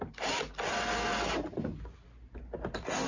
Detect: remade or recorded recorded